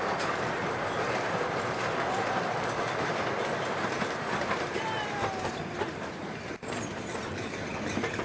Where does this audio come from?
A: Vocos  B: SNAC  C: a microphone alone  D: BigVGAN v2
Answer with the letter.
D